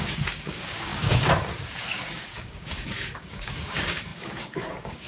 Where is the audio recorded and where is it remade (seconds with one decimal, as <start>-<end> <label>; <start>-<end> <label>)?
0.0-5.1 remade